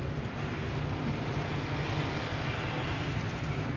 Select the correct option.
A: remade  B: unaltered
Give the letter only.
B